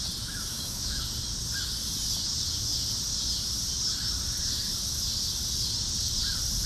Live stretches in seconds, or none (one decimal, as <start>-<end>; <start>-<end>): 0.0-0.5; 1.0-6.7